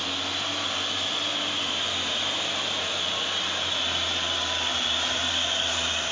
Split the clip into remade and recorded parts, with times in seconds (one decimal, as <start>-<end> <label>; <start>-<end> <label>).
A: 0.0-1.3 recorded; 1.3-2.9 remade; 2.9-4.7 recorded; 4.7-5.3 remade; 5.3-6.1 recorded